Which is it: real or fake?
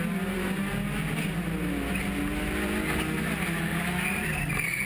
real